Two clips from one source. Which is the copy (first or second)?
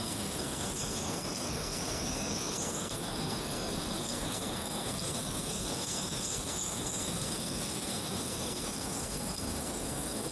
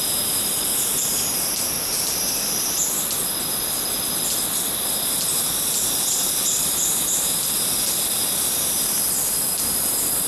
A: first